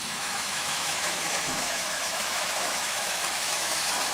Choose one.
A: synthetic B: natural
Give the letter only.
A